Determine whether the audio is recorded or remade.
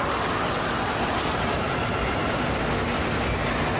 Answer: recorded